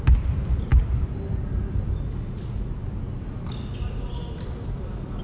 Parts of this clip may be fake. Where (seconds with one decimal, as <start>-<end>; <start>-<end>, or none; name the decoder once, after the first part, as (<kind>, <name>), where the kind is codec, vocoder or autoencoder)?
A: none